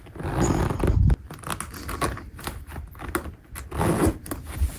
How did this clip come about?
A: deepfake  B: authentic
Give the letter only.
B